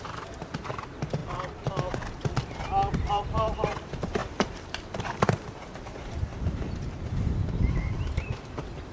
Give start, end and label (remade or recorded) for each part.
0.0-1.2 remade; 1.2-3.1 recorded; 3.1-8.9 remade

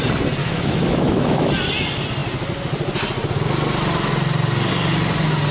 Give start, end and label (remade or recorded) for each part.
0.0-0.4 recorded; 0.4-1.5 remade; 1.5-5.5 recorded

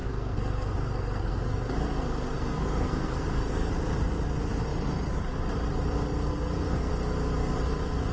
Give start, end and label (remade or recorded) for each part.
0.0-3.7 remade; 3.7-6.3 recorded; 6.3-6.9 remade; 6.9-8.1 recorded

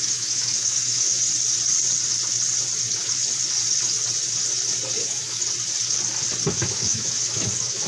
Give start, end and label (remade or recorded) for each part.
0.0-1.2 remade; 1.2-5.0 recorded; 5.0-5.4 remade; 5.4-6.5 recorded; 6.5-7.9 remade

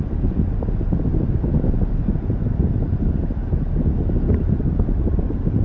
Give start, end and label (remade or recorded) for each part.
0.0-1.1 remade; 1.1-2.8 recorded; 2.8-3.4 remade; 3.4-4.3 recorded; 4.3-5.6 remade

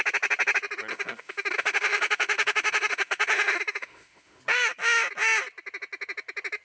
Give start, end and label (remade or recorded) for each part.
0.0-0.9 recorded; 0.9-4.4 remade; 4.4-6.6 recorded